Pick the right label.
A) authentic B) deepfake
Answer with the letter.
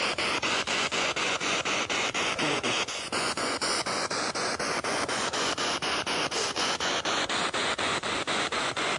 B